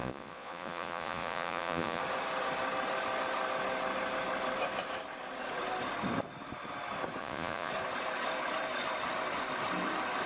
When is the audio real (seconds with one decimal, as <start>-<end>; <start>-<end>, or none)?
2.0-7.2; 7.7-10.3